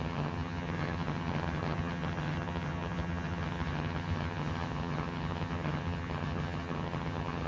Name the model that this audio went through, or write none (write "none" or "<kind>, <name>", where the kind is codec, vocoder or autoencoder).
vocoder, HiFi-GAN